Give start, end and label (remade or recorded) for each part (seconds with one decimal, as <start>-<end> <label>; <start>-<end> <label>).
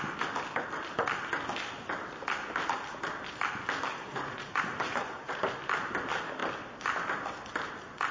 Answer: 0.0-3.9 recorded; 3.9-5.4 remade; 5.4-8.1 recorded